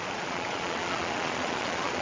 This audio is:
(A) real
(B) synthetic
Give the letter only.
B